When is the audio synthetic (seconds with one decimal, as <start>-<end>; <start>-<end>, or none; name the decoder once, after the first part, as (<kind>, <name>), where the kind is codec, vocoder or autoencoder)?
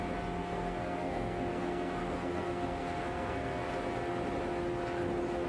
0.4-3.7 (codec, SNAC)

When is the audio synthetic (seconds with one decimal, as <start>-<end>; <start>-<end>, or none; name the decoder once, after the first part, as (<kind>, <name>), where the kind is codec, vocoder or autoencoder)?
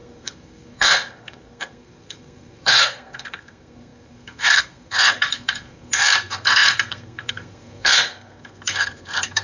0.0-9.4 (codec, SNAC)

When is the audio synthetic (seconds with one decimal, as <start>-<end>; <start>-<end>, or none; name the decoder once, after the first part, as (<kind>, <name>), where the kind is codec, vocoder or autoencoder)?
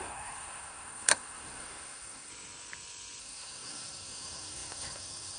0.0-2.3 (codec, SNAC); 3.2-5.4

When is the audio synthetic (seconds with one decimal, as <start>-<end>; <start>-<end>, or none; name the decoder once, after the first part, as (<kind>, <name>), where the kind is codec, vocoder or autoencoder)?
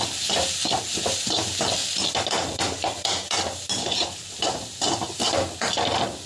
none